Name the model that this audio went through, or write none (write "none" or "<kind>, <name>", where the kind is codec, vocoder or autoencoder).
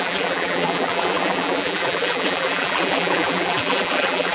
vocoder, BigVGAN v2